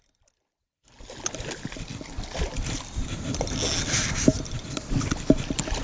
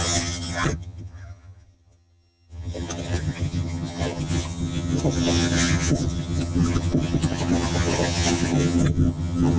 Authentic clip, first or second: first